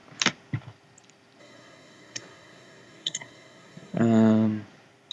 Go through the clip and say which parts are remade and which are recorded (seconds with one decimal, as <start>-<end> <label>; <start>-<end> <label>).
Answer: 0.0-1.4 recorded; 1.4-4.0 remade; 4.0-5.1 recorded